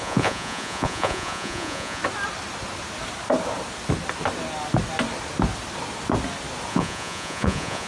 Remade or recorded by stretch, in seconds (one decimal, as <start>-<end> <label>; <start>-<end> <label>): 0.0-2.0 remade; 2.0-6.7 recorded; 6.7-7.9 remade